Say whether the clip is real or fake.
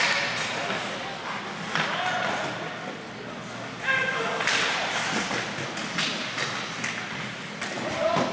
real